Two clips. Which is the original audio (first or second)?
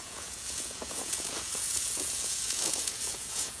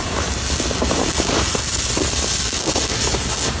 second